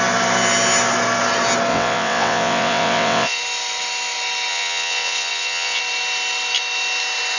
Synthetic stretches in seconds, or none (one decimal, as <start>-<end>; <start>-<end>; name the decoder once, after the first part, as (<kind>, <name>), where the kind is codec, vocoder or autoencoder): 1.7-3.4 (vocoder, WaveNeXt); 4.5-5.8